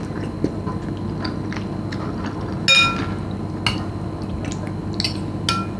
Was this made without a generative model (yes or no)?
yes